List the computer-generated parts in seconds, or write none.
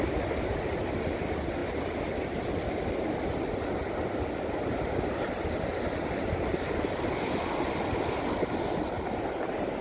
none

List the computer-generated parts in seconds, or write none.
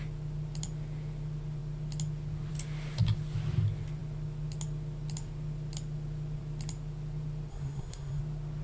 7.5-8.2 (codec, SNAC)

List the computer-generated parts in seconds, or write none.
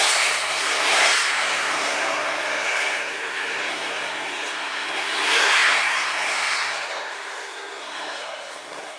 0.0-9.0 (codec, SNAC)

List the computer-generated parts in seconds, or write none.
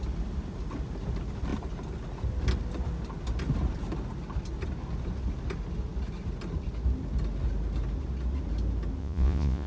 9.0-9.7 (vocoder, Vocos)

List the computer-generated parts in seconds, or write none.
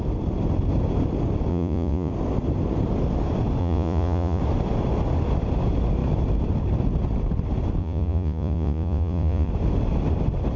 1.5-2.1 (vocoder, Vocos); 3.6-4.4; 7.8-9.5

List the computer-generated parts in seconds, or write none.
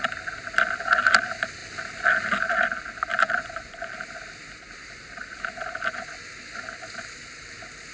3.1-3.9 (vocoder, Vocos)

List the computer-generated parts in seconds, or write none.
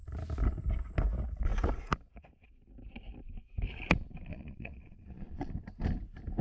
4.3-5.5 (vocoder, Vocos)